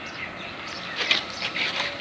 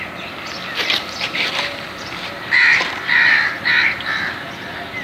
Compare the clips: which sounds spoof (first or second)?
first